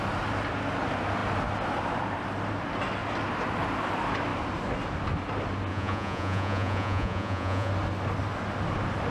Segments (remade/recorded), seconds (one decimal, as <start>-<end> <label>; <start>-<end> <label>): 0.0-5.7 recorded; 5.7-7.7 remade; 7.7-9.1 recorded